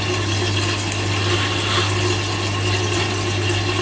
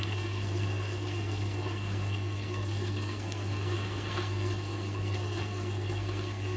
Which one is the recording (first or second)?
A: first